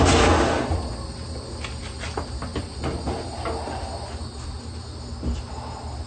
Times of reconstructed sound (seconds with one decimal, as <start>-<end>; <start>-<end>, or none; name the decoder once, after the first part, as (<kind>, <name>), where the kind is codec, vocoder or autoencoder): none